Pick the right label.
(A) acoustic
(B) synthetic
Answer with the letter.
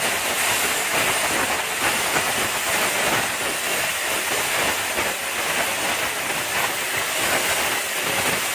A